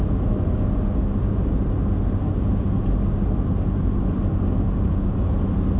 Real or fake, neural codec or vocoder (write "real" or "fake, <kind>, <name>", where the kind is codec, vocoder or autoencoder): real